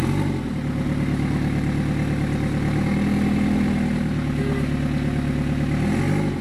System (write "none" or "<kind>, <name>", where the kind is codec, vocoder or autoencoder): none